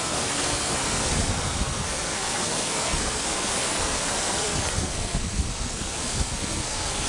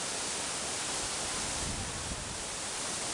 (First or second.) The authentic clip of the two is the second